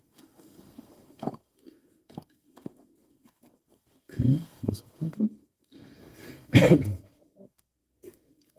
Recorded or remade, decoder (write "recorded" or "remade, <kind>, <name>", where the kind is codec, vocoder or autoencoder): remade, codec, SNAC